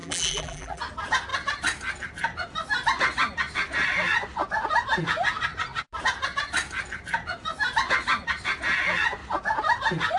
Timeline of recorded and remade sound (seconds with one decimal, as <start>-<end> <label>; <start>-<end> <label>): 0.0-0.8 remade; 0.8-10.2 recorded